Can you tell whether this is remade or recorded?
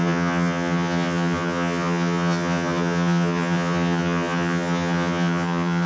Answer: remade